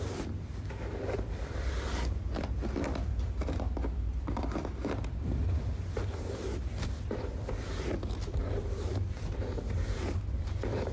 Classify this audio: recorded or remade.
remade